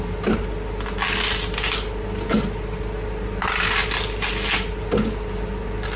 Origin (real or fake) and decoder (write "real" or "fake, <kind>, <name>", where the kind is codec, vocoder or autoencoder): real